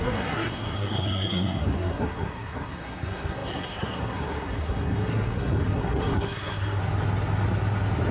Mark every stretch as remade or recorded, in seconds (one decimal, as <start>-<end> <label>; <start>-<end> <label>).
0.0-6.8 remade; 6.8-8.1 recorded